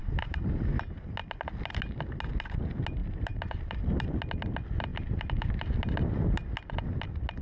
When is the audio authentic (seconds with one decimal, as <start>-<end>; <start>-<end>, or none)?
0.5-3.0; 4.0-4.9; 5.8-7.4